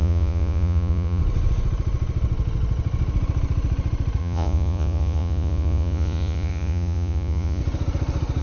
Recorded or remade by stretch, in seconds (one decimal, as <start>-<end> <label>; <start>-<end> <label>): 0.0-1.2 remade; 1.2-4.2 recorded; 4.2-7.6 remade; 7.6-8.4 recorded